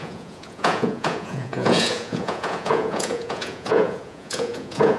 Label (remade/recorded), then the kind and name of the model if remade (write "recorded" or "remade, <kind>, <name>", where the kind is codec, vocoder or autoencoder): remade, vocoder, Vocos